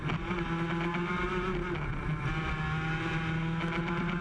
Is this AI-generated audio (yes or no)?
no